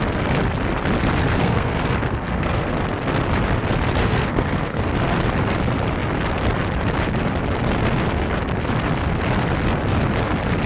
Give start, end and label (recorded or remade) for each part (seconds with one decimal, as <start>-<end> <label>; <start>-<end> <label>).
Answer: 0.0-1.4 recorded; 1.4-2.7 remade; 2.7-4.0 recorded; 4.0-4.8 remade; 4.8-10.7 recorded